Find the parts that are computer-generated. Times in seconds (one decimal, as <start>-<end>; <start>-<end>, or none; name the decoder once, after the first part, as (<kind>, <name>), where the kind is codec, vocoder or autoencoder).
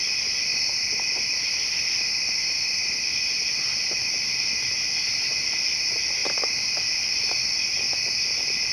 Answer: none